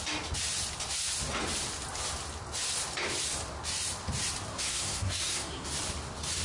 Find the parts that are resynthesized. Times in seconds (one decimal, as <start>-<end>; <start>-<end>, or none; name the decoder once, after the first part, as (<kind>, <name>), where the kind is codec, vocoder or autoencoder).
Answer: 4.5-5.7 (codec, SNAC)